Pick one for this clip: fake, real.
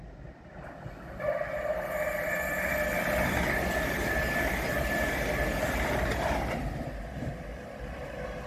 real